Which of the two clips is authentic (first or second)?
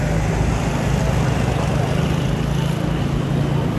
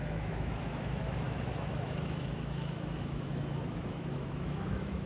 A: first